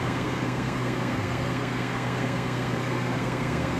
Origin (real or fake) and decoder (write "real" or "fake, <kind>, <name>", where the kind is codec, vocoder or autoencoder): fake, codec, SNAC